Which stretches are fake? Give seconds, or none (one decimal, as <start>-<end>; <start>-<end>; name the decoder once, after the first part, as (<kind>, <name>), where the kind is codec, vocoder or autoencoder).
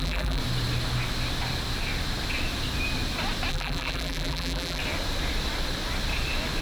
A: 0.0-0.4 (vocoder, BigVGAN v2); 3.5-4.8